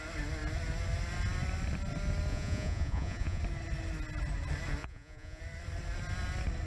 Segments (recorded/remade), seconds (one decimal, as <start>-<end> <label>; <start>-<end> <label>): 0.0-2.3 recorded; 2.3-3.4 remade; 3.4-4.8 recorded; 4.8-5.4 remade; 5.4-6.7 recorded